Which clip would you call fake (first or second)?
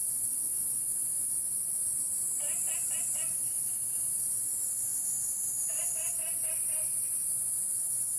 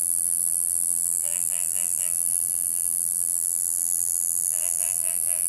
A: second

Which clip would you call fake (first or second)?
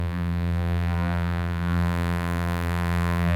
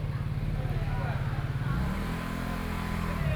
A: first